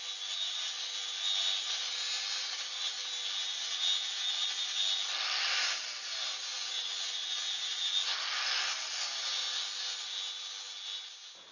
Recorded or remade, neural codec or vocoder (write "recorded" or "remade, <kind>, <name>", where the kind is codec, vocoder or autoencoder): recorded